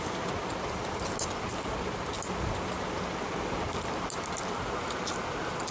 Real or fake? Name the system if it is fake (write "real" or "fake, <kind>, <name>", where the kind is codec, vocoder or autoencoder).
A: real